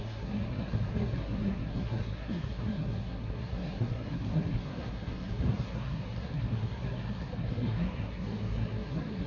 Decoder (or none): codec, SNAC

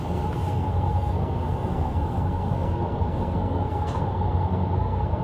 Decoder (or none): codec, SNAC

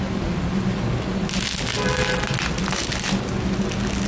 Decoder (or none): none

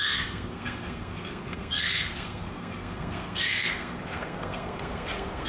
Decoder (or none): codec, SNAC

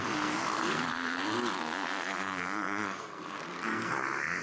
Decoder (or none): codec, SNAC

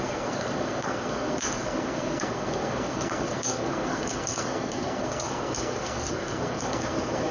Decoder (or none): codec, SNAC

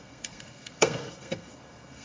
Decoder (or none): codec, SNAC